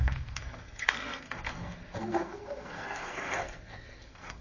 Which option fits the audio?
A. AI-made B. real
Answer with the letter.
A